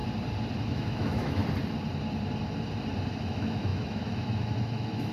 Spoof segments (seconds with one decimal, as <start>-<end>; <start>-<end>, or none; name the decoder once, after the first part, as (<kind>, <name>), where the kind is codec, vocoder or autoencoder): 0.6-1.4 (autoencoder, DAC-VAE); 3.2-5.1